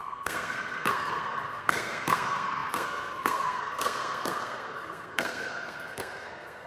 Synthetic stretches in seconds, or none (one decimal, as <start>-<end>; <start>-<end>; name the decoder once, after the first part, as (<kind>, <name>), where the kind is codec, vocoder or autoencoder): 0.0-6.7 (codec, SNAC)